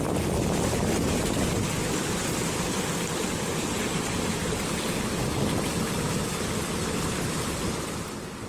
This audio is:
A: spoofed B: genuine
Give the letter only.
B